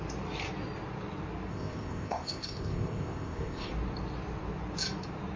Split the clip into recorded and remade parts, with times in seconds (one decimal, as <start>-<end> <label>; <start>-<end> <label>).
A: 0.0-1.5 recorded; 1.5-3.7 remade; 3.7-5.4 recorded